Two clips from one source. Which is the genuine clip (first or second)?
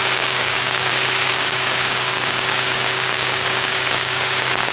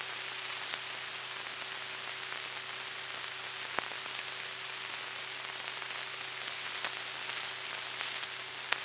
second